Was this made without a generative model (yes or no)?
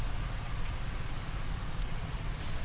yes